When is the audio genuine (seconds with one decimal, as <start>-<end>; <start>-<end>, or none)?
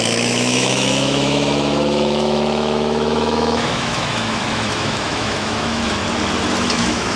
6.0-6.6